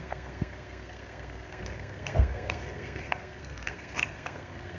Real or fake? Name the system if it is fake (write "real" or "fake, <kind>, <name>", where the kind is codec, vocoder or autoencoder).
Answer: fake, codec, SNAC